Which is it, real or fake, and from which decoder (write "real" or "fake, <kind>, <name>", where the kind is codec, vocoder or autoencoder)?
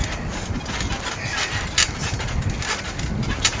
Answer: real